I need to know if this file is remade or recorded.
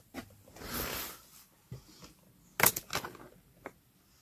recorded